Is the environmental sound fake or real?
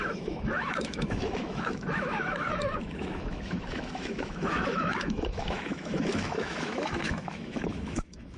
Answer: fake